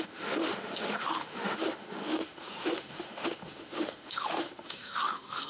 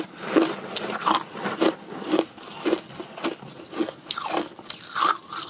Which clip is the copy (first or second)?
first